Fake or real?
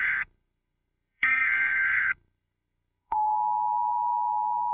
fake